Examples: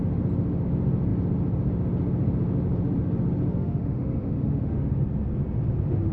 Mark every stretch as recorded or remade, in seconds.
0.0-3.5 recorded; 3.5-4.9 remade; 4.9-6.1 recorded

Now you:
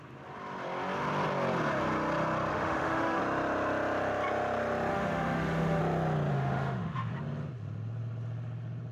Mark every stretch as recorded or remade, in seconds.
0.0-2.5 recorded; 2.5-3.2 remade; 3.2-4.9 recorded; 4.9-5.8 remade; 5.8-6.3 recorded; 6.3-7.1 remade; 7.1-8.9 recorded

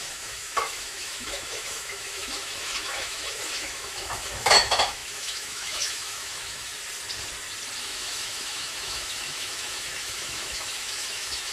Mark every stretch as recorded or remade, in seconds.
0.0-6.7 remade; 6.7-7.8 recorded; 7.8-11.5 remade

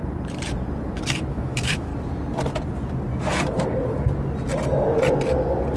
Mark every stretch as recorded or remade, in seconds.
0.0-1.3 recorded; 1.3-1.9 remade; 1.9-5.8 recorded

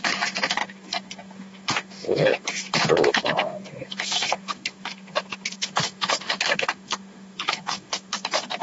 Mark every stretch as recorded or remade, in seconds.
0.0-8.6 remade

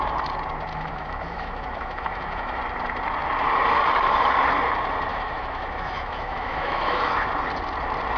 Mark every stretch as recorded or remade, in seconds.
0.0-0.7 recorded; 0.7-2.6 remade; 2.6-5.1 recorded; 5.1-7.3 remade; 7.3-8.2 recorded